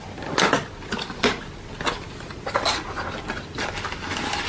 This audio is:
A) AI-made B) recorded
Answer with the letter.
B